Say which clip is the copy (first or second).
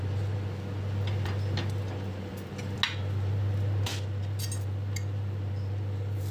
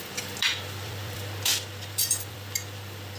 second